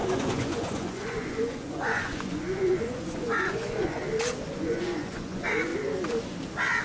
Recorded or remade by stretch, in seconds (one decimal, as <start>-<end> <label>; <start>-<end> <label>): 0.0-4.0 remade; 4.0-4.5 recorded; 4.5-5.7 remade; 5.7-6.8 recorded